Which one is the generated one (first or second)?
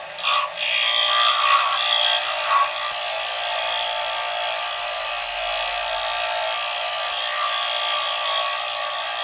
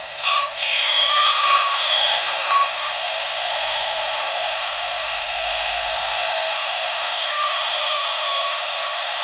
second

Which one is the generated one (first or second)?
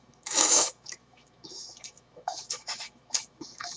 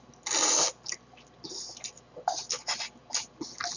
first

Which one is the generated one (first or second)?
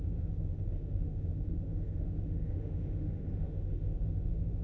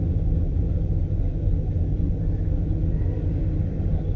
first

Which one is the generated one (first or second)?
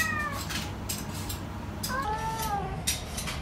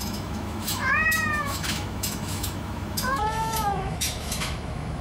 second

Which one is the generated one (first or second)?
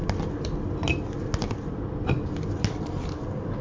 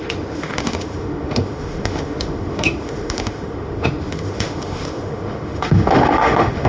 second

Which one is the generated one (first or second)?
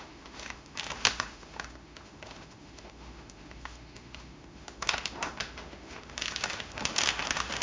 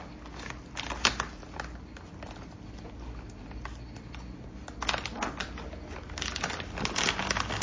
first